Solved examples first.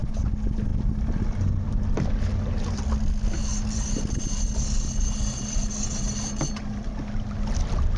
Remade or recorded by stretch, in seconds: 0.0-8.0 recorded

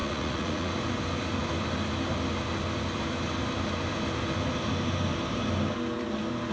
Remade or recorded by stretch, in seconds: 0.0-0.7 remade; 0.7-6.5 recorded

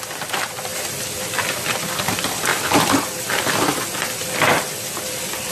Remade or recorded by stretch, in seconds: 0.0-2.5 remade; 2.5-5.0 recorded; 5.0-5.5 remade

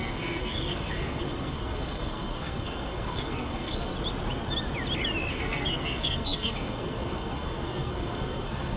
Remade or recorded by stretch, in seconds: 0.0-3.9 remade; 3.9-5.3 recorded; 5.3-8.8 remade

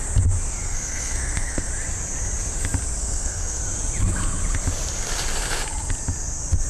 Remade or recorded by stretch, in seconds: 0.0-0.6 recorded; 0.6-1.7 remade; 1.7-3.0 recorded; 3.0-3.6 remade; 3.6-6.7 recorded